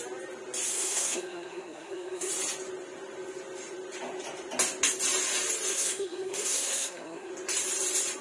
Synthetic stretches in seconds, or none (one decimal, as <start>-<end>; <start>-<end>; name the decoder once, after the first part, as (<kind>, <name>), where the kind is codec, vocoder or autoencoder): 0.7-2.3 (codec, SNAC); 5.7-7.3